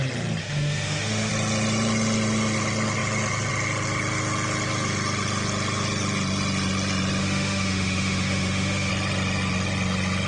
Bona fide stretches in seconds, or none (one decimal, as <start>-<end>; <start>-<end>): 0.0-0.4; 1.3-7.2; 8.9-10.3